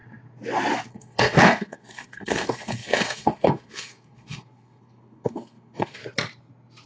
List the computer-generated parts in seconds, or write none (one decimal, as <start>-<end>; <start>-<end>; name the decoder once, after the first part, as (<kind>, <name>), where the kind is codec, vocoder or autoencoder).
0.9-6.0 (codec, SNAC)